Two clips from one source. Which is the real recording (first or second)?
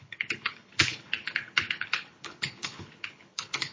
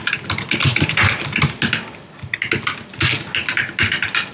second